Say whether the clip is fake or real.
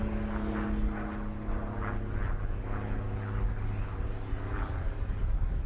real